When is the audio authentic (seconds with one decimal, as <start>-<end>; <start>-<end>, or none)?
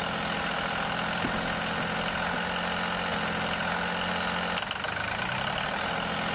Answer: 0.0-6.3